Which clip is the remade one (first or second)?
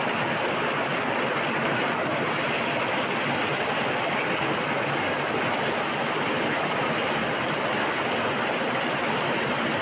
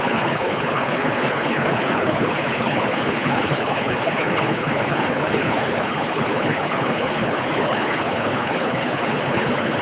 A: second